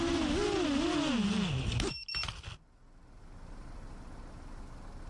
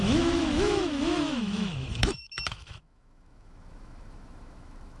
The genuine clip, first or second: first